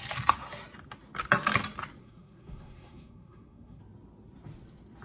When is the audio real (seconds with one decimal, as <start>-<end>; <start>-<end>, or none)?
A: 0.0-2.0; 3.8-5.0